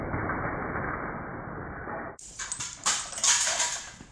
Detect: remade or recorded remade